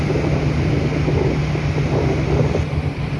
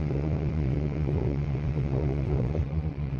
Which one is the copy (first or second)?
second